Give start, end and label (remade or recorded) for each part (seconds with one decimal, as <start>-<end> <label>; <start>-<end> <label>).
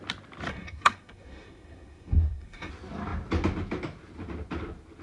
0.0-0.5 recorded; 0.5-2.7 remade; 2.7-5.0 recorded